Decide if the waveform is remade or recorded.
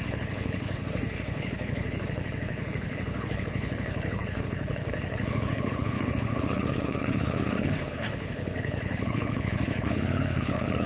remade